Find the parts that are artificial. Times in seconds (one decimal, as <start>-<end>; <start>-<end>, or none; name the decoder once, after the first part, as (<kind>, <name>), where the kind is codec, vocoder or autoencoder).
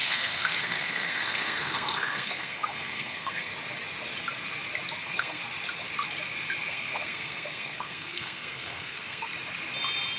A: 0.0-3.5 (codec, SNAC); 5.0-5.4; 6.7-9.3